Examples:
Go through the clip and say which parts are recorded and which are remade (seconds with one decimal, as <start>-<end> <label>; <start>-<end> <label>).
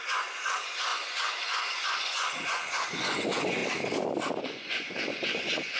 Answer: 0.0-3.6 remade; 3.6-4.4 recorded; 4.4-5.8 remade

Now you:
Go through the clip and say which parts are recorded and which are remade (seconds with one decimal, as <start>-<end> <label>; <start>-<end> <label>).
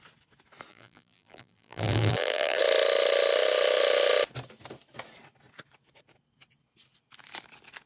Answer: 0.0-0.7 recorded; 0.7-2.6 remade; 2.6-7.9 recorded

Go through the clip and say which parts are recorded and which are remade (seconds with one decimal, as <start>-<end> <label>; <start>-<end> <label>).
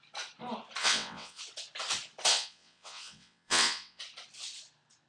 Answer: 0.0-0.8 recorded; 0.8-1.4 remade; 1.4-2.3 recorded; 2.3-4.0 remade; 4.0-5.1 recorded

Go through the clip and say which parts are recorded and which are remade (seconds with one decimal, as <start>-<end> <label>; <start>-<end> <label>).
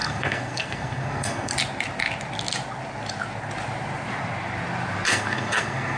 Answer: 0.0-1.5 remade; 1.5-5.1 recorded; 5.1-6.0 remade